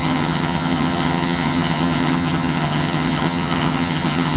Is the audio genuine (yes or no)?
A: no